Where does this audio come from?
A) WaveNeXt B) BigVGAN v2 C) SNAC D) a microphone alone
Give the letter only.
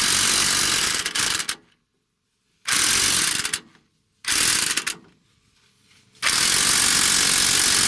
D